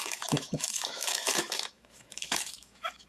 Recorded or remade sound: remade